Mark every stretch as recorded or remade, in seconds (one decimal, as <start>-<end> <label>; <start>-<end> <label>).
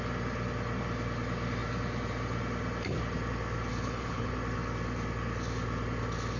0.0-3.7 recorded; 3.7-4.3 remade; 4.3-6.4 recorded